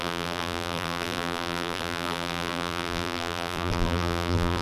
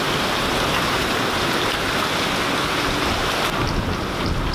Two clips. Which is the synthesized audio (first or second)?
first